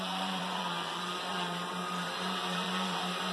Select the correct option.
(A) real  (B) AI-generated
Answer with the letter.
B